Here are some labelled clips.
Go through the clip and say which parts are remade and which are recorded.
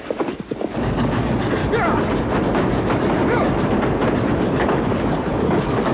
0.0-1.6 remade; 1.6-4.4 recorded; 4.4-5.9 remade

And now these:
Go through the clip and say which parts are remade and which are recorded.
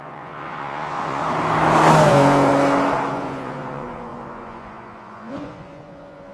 0.0-1.2 remade; 1.2-2.1 recorded; 2.1-2.5 remade; 2.5-3.1 recorded; 3.1-6.3 remade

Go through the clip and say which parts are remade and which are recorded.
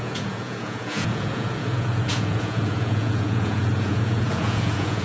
0.0-5.0 remade